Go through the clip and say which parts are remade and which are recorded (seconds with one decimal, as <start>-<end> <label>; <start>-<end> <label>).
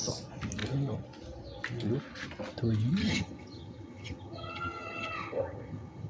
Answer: 0.0-3.0 recorded; 3.0-6.1 remade